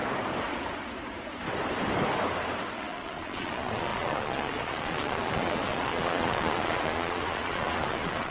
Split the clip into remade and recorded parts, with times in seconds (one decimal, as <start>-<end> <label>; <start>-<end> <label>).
0.0-2.8 recorded; 2.8-8.3 remade